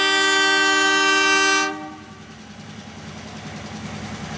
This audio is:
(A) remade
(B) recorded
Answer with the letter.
B